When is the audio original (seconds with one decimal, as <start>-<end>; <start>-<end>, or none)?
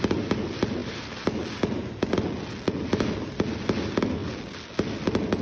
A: 0.0-5.4